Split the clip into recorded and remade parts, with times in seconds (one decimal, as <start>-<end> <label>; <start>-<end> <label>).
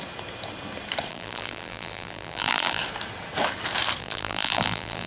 0.0-1.1 recorded; 1.1-2.8 remade; 2.8-4.0 recorded; 4.0-5.1 remade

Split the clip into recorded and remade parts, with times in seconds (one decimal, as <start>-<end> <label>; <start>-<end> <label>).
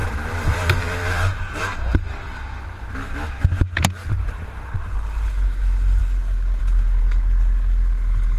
0.0-1.4 remade; 1.4-4.0 recorded; 4.0-4.7 remade; 4.7-8.4 recorded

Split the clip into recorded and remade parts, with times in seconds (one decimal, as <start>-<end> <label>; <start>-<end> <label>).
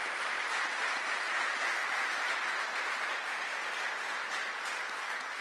0.0-5.4 recorded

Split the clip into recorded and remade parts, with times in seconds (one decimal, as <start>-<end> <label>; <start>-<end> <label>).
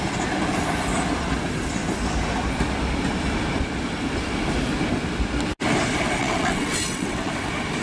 0.0-6.2 recorded; 6.2-7.3 remade; 7.3-7.8 recorded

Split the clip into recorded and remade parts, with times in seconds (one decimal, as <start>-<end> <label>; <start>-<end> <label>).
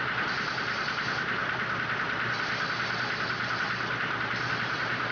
0.0-5.1 recorded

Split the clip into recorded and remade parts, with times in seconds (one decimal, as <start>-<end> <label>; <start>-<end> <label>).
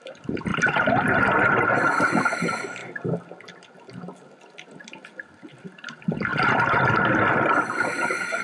0.0-2.8 remade; 2.8-5.5 recorded; 5.5-8.4 remade